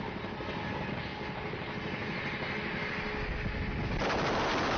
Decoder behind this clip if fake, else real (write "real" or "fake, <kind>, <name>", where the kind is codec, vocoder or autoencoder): real